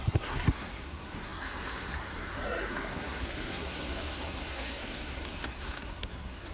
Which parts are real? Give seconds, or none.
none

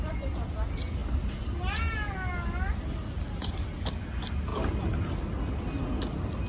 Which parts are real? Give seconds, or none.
0.0-6.5

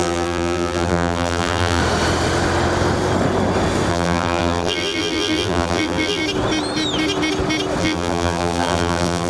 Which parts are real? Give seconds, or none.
1.8-3.9; 6.2-7.8

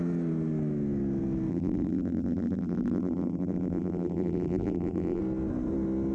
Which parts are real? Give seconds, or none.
0.0-1.5; 5.2-6.1

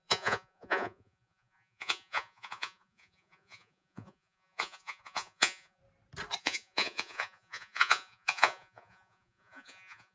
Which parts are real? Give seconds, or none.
5.8-6.4

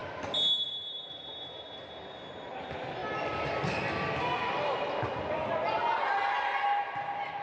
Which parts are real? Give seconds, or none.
0.0-7.4

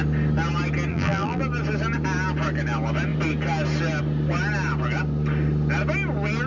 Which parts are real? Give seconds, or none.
0.0-0.9; 1.4-6.5

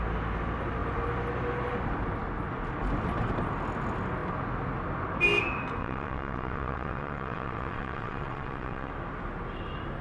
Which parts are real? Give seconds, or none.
0.0-5.8; 8.9-10.0